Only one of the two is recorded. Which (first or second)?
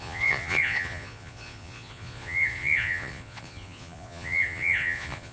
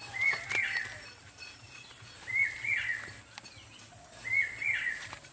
second